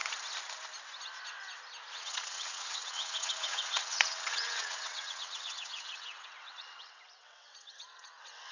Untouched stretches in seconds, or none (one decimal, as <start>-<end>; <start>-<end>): 0.0-1.9

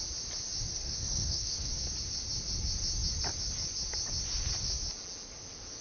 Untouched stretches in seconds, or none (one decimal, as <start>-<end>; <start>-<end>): 0.0-0.7; 1.7-5.8